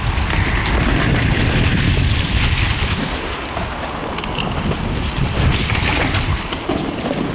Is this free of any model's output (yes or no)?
yes